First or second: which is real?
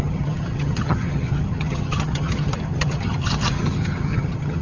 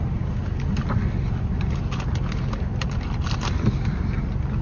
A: second